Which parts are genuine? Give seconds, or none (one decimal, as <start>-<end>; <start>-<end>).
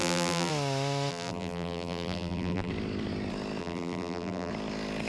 0.5-1.1; 2.7-3.6; 4.5-5.1